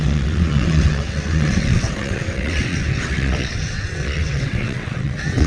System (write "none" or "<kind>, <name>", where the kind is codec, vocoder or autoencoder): vocoder, WaveNeXt